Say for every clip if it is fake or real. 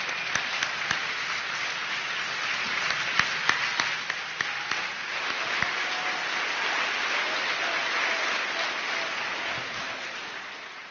real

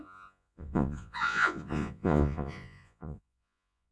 fake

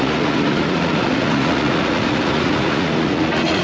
fake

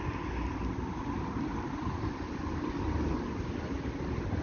real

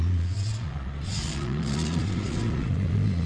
fake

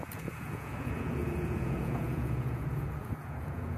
fake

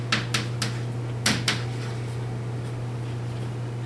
real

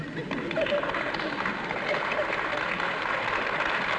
real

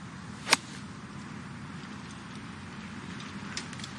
real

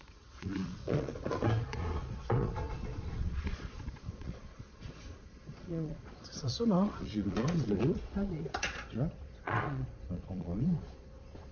fake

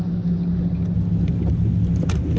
real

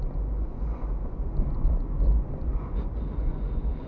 fake